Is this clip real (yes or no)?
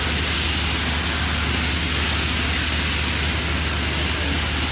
yes